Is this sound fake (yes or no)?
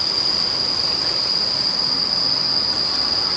no